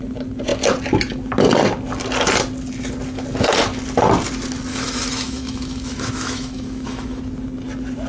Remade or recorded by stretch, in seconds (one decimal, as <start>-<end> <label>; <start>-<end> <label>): 0.0-4.7 recorded; 4.7-7.2 remade; 7.2-8.1 recorded